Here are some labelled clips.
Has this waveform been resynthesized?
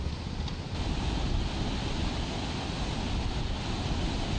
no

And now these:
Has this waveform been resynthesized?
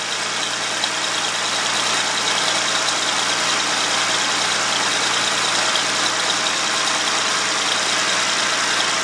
no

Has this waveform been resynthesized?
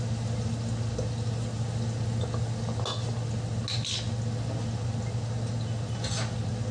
no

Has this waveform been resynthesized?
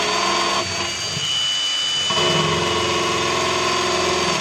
no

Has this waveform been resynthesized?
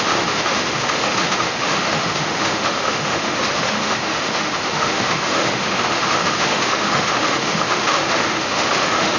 yes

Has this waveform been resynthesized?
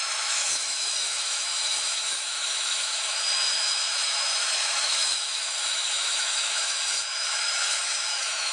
yes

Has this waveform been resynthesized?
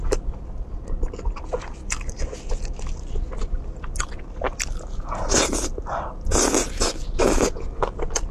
no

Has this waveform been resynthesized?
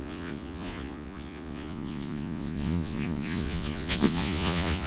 yes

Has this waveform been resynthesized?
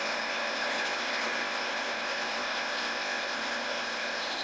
yes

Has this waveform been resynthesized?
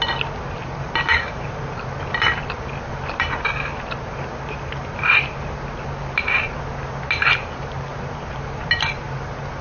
no